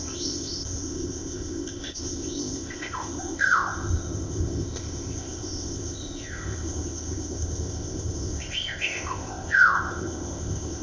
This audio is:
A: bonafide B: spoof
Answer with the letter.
B